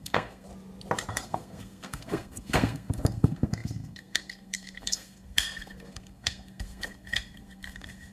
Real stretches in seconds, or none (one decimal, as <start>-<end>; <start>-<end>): 0.5-1.1